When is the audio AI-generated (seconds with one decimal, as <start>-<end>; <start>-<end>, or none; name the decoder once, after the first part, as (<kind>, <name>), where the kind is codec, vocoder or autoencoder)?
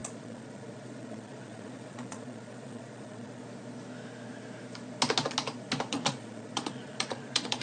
0.0-3.4 (vocoder, Vocos); 5.9-7.6